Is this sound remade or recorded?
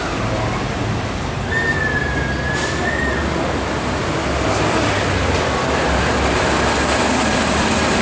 recorded